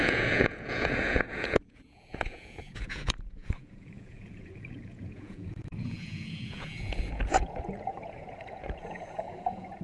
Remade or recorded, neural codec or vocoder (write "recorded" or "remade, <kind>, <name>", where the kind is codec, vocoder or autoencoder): remade, vocoder, Vocos